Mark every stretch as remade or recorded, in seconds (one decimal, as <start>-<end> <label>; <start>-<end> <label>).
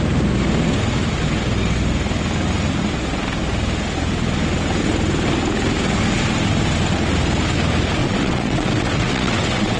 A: 0.0-8.0 recorded; 8.0-9.8 remade